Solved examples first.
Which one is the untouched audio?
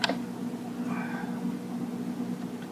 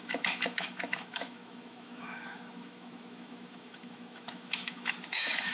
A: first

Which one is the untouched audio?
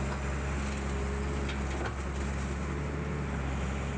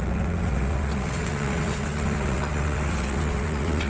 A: first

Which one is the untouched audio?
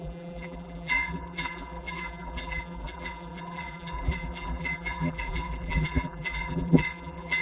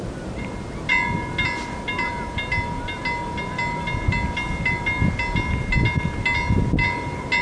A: second